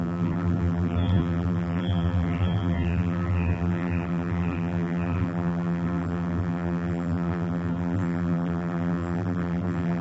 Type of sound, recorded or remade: remade